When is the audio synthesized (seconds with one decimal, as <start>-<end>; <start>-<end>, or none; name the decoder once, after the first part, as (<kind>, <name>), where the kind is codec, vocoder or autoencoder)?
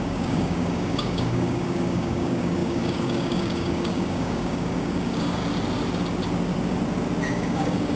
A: 0.0-5.4 (codec, DAC); 7.2-8.0